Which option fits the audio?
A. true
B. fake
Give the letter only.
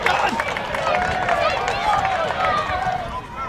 A